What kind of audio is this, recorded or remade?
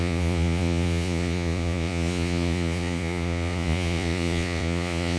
remade